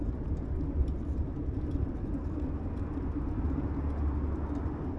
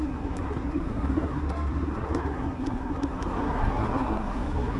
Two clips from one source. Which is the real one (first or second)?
first